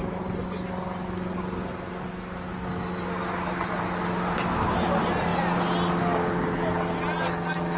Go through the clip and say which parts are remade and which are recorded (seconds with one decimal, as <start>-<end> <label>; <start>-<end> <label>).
0.0-7.8 recorded